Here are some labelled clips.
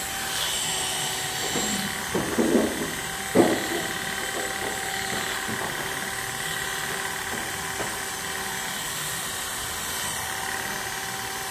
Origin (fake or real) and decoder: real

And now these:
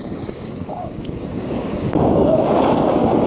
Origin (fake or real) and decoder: fake, codec, DAC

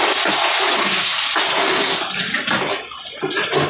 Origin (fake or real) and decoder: real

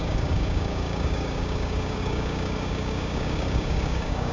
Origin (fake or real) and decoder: fake, codec, DAC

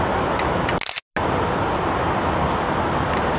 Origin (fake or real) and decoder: real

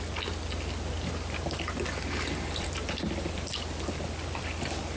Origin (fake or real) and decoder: real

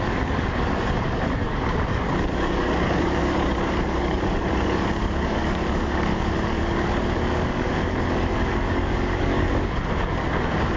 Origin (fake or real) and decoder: fake, codec, DAC